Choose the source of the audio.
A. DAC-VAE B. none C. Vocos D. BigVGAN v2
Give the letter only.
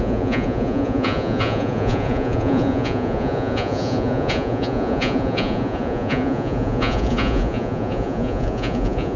C